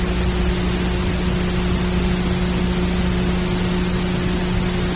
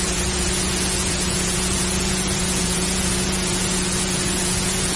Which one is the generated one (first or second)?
second